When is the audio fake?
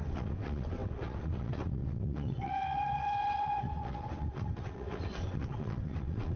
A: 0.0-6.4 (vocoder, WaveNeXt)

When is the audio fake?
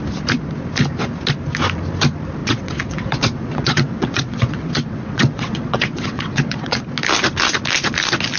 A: 2.4-6.8 (vocoder, WaveNeXt)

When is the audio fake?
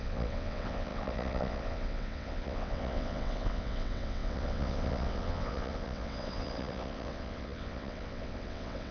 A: 0.0-8.9 (vocoder, WaveNeXt)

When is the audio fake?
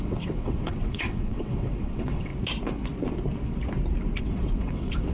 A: 0.0-2.3 (vocoder, WaveNeXt); 4.2-5.1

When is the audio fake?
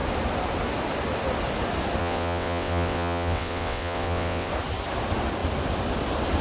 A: 2.0-4.5 (vocoder, WaveNeXt)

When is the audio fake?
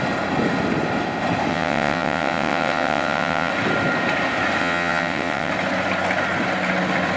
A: 1.5-3.5 (vocoder, WaveNeXt); 4.6-5.5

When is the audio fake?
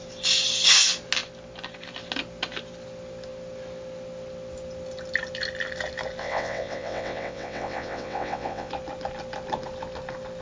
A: 6.2-8.7 (vocoder, WaveNeXt)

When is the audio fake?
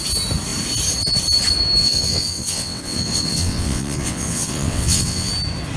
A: 1.8-5.3 (vocoder, WaveNeXt)